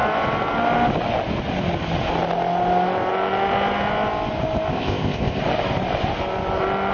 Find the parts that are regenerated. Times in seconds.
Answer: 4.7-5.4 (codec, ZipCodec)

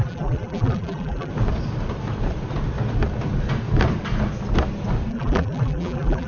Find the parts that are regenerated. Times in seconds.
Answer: 0.0-1.3 (vocoder, BigVGAN v2); 5.1-6.3

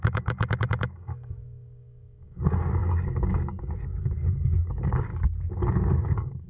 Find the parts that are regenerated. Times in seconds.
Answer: 0.0-5.1 (codec, DAC); 5.8-6.5

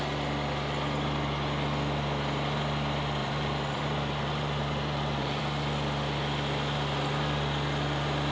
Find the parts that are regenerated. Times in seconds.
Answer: 3.2-5.4 (vocoder, BigVGAN v2)

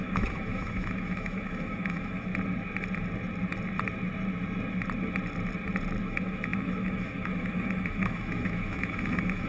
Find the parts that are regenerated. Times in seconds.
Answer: 0.0-2.3 (autoencoder, DAC-VAE); 6.0-9.5

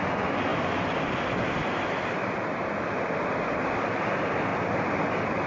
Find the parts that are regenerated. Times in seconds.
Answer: 0.5-3.8 (vocoder, BigVGAN v2)

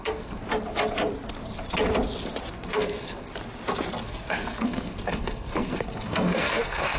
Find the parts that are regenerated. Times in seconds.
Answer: 0.0-0.4 (codec, SNAC); 2.5-3.3; 4.0-7.0

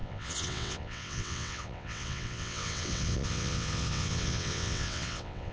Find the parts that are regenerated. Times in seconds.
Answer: 0.0-5.5 (vocoder, WaveNeXt)